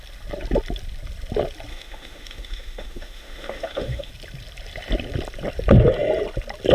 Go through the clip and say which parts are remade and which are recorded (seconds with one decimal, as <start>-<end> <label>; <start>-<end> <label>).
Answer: 0.0-1.7 recorded; 1.7-4.1 remade; 4.1-6.7 recorded